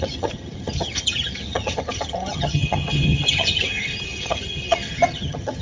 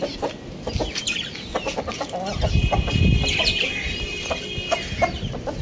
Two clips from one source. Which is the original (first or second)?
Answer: second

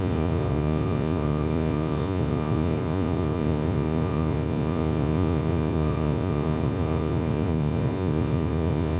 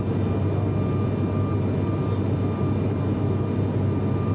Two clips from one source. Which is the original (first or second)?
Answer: second